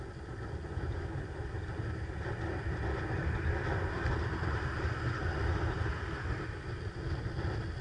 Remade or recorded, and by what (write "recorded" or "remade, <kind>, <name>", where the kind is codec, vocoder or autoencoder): recorded